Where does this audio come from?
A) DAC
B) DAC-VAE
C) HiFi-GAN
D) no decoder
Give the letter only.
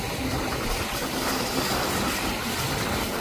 D